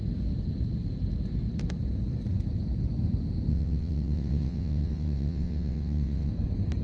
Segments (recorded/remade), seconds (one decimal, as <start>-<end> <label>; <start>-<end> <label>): 0.0-3.5 recorded; 3.5-6.3 remade; 6.3-6.8 recorded